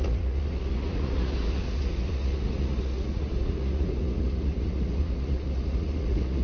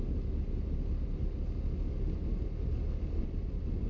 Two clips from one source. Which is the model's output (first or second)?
first